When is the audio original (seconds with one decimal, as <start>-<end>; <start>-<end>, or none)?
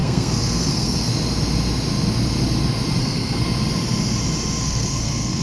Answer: 1.1-3.0; 3.4-4.6